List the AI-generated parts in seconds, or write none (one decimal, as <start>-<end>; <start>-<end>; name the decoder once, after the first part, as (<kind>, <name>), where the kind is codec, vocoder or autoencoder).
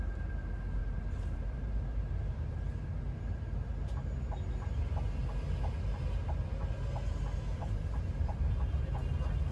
0.8-2.5 (vocoder, BigVGAN v2); 7.6-8.5